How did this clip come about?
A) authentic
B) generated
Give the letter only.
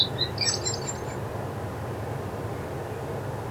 A